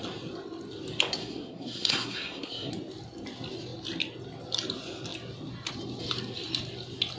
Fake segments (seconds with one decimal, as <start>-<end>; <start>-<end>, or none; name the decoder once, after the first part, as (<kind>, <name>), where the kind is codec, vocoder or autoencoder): 1.2-2.7 (codec, SNAC)